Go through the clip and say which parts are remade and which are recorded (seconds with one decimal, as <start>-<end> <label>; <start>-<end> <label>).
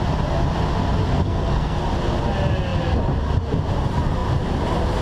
0.0-1.1 recorded; 1.1-1.8 remade; 1.8-5.0 recorded